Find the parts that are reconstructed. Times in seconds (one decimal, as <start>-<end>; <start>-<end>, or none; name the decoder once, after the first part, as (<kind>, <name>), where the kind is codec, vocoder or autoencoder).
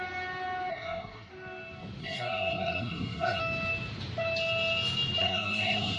0.7-1.3 (codec, SNAC); 2.0-3.4; 5.2-6.0